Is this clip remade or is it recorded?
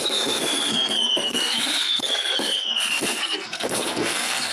remade